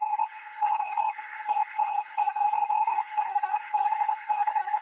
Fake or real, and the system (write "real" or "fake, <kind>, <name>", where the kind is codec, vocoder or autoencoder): fake, codec, SNAC